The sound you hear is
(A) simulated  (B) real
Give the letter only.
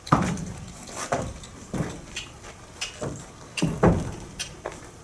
B